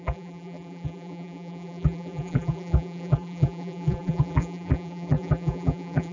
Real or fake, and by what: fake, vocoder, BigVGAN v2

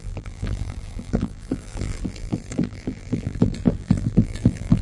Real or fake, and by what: fake, vocoder, BigVGAN v2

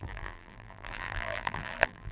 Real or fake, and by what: fake, vocoder, BigVGAN v2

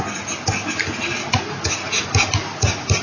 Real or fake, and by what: real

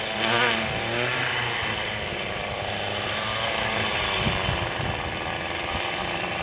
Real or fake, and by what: real